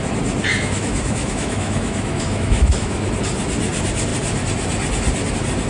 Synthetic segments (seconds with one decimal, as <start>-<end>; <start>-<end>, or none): 0.5-3.1